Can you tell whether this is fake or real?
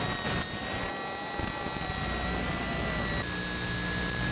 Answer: real